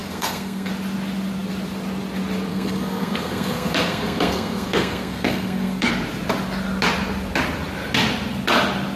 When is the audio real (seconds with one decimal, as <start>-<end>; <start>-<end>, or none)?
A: 0.7-2.5; 5.9-9.0